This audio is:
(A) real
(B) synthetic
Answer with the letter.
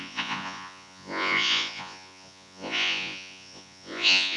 B